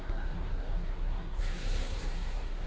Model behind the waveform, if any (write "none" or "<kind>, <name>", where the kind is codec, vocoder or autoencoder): codec, SNAC